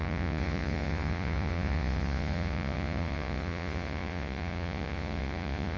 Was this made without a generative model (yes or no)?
no